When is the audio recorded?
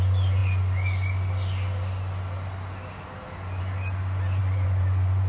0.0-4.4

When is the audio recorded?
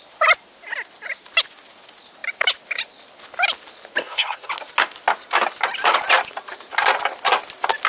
0.0-4.0; 4.5-7.9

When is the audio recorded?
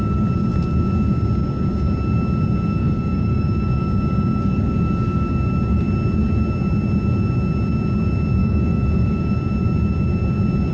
0.0-2.8; 3.8-8.4; 9.3-10.7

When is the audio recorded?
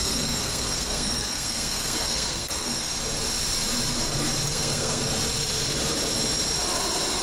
2.9-4.5; 5.0-7.2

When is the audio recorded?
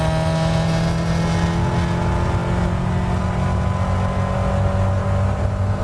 0.0-5.8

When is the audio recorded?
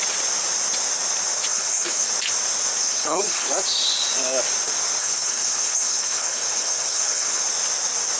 0.0-1.5; 2.1-2.8; 3.5-5.0; 7.4-8.2